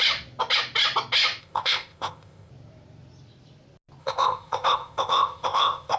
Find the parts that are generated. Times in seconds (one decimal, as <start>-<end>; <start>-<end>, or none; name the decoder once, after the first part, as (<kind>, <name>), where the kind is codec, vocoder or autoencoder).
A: 1.4-2.5 (codec, ZipCodec); 4.0-6.0